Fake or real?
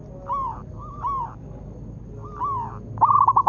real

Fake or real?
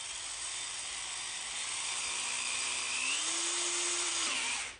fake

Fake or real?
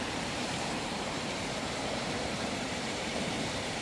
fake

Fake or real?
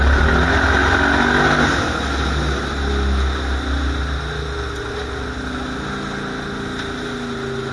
real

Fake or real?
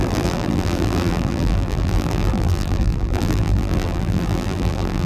fake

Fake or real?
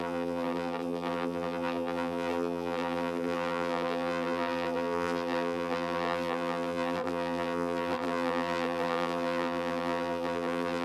fake